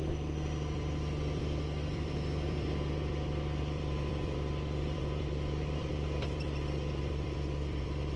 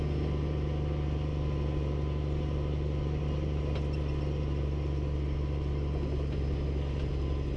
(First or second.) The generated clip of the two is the first